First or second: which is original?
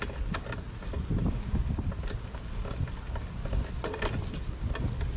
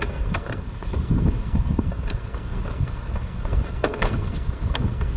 first